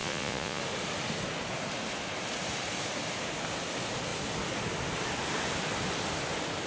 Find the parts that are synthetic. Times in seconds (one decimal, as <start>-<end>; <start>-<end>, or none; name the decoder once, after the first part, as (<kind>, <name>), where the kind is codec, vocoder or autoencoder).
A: 0.0-0.6 (vocoder, Vocos)